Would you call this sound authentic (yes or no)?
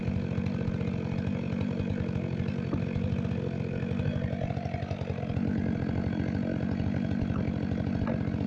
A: yes